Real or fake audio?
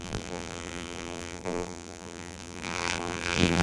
fake